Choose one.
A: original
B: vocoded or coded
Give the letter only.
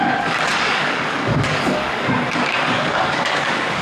B